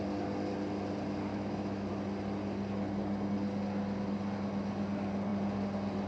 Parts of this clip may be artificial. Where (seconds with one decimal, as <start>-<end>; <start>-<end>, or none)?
1.3-1.9